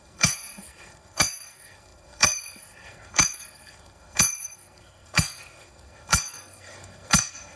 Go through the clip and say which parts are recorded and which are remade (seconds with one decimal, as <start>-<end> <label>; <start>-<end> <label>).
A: 0.0-7.6 remade